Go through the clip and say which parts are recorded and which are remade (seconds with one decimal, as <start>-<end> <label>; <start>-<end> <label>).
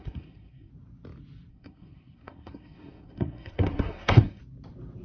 0.0-0.7 remade; 0.7-1.5 recorded; 1.5-4.4 remade; 4.4-5.0 recorded